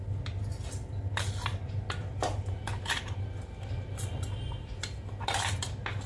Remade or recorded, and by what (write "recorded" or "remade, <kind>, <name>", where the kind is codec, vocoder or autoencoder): recorded